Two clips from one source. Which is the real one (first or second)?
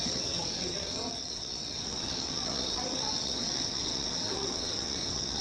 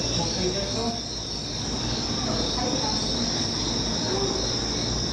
second